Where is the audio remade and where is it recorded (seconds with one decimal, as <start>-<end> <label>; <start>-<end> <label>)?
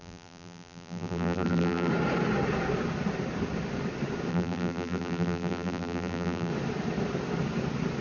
0.0-1.9 remade; 1.9-4.3 recorded; 4.3-6.5 remade; 6.5-8.0 recorded